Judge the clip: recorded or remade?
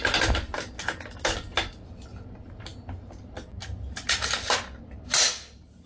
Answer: recorded